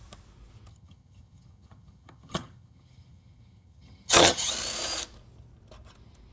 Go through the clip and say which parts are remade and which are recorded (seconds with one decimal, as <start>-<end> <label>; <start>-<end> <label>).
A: 0.0-0.7 recorded; 0.7-4.5 remade; 4.5-6.3 recorded